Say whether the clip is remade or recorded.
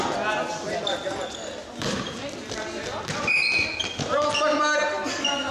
recorded